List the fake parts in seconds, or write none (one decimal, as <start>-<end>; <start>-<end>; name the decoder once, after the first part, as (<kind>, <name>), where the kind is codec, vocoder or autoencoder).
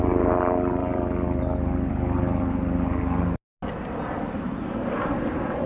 0.8-1.9 (vocoder, BigVGAN v2)